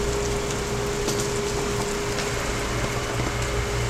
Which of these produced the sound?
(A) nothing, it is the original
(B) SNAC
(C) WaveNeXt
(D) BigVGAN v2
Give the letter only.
A